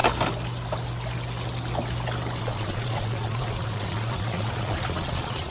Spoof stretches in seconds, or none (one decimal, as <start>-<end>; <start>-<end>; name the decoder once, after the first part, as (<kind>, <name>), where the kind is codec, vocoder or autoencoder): 2.4-5.5 (vocoder, Vocos)